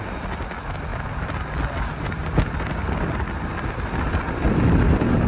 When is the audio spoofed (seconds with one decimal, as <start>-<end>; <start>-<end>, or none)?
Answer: none